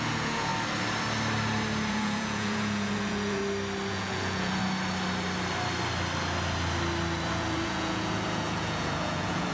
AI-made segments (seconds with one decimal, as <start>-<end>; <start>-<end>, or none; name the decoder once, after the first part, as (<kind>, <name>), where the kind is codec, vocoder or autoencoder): 0.0-0.5 (vocoder, Vocos); 1.9-3.4; 3.9-4.6; 7.3-9.5